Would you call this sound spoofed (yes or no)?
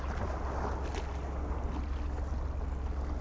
no